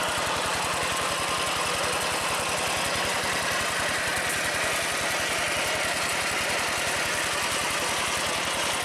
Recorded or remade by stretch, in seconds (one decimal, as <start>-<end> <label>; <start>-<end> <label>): 0.0-8.8 recorded